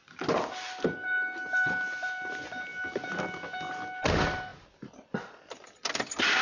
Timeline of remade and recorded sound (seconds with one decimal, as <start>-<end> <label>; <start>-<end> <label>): 0.0-6.4 recorded